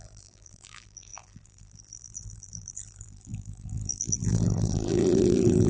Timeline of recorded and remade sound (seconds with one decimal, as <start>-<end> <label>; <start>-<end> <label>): 0.0-5.7 remade